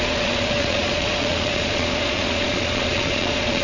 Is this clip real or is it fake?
fake